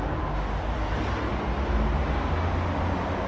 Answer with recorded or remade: recorded